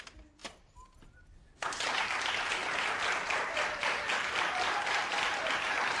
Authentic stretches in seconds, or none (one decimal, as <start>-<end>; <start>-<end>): 0.0-0.4; 1.8-6.0